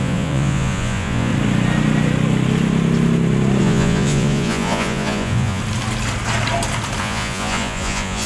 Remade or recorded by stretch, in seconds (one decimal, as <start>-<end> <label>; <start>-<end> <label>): 0.0-1.3 remade; 1.3-3.6 recorded; 3.6-5.6 remade; 5.6-7.0 recorded; 7.0-8.3 remade